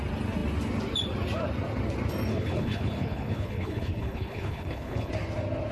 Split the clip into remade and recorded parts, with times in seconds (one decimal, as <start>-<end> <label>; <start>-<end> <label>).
0.0-2.3 recorded; 2.3-5.1 remade; 5.1-5.7 recorded